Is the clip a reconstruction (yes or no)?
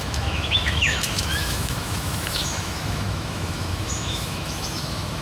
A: yes